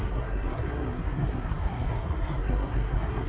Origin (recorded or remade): remade